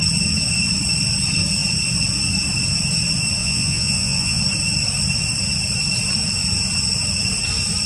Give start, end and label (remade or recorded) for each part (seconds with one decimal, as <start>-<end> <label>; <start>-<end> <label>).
0.0-3.4 recorded; 3.4-4.4 remade; 4.4-7.9 recorded